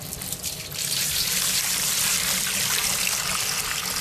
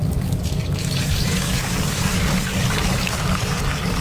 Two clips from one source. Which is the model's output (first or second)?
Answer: second